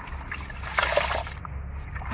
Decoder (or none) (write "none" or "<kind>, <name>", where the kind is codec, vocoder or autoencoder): none